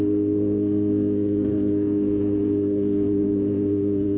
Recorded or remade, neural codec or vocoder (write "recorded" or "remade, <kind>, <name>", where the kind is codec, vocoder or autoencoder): remade, codec, SNAC